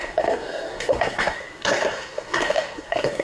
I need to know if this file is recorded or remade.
remade